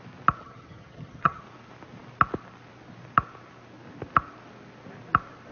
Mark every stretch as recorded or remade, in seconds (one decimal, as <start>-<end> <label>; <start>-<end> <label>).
0.0-0.4 recorded; 0.4-1.4 remade; 1.4-5.5 recorded